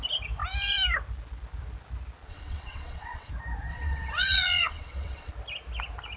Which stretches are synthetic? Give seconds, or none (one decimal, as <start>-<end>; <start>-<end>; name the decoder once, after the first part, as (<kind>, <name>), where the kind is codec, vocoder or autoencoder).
2.3-3.3 (vocoder, WaveNeXt); 3.7-5.3